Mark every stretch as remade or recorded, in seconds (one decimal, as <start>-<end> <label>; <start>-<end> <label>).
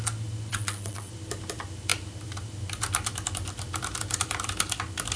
0.0-0.5 recorded; 0.5-1.1 remade; 1.1-5.2 recorded